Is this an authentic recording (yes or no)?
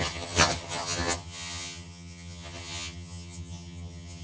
no